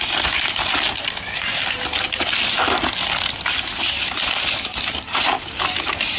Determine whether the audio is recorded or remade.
recorded